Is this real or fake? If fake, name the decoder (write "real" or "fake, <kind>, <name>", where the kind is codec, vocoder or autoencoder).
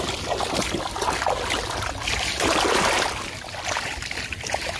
real